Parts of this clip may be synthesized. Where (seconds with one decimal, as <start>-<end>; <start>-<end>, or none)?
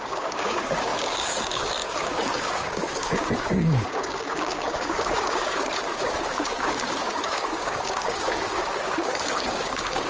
0.0-10.1